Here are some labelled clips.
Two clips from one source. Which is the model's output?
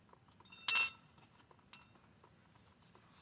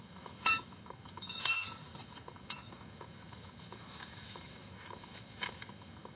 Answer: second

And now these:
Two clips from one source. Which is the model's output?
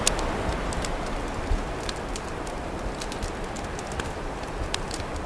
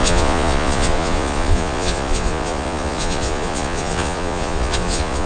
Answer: second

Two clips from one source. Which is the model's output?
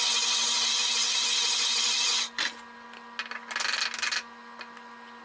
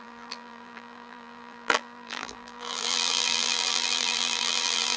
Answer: second